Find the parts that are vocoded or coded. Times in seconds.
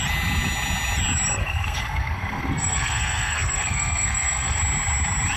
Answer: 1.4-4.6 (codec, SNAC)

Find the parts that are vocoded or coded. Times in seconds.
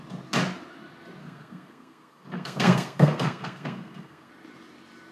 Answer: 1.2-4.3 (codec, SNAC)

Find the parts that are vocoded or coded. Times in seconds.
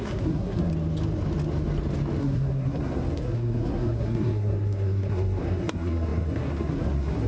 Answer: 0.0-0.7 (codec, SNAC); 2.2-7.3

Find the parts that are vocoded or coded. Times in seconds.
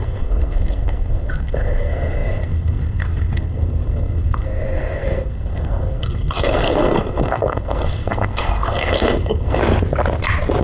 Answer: 0.0-9.6 (codec, SNAC)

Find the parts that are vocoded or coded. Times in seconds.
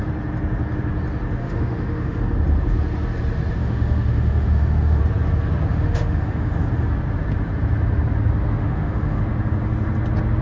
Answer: 1.4-2.2 (autoencoder, DAC-VAE); 3.6-5.0; 5.7-6.5; 8.6-9.2